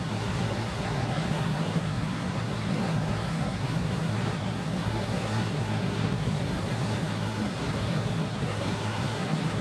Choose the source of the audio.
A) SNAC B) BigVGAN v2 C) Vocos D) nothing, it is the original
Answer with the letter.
A